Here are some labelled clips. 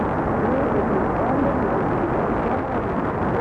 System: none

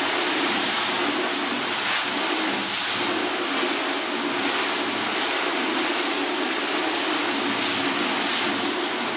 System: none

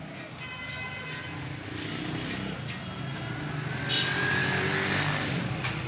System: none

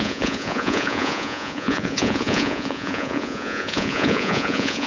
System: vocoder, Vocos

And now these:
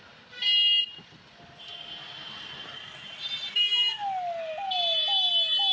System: none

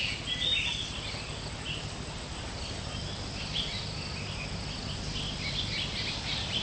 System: none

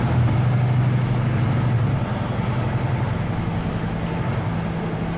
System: none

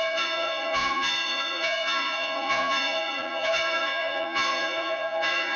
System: vocoder, Vocos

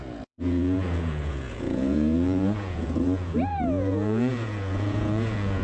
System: vocoder, Vocos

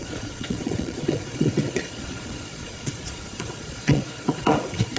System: vocoder, Vocos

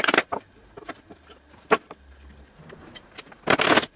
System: none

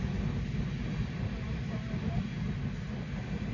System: none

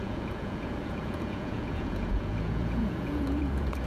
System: vocoder, Vocos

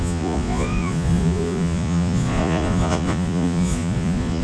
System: vocoder, Vocos